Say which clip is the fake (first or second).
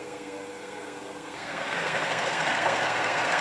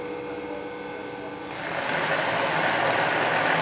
first